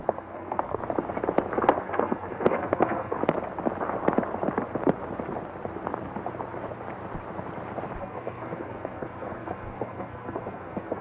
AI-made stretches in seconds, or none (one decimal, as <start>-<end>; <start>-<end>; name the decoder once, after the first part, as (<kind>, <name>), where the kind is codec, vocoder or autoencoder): 0.0-0.8 (codec, SNAC); 1.8-3.2; 8.0-11.0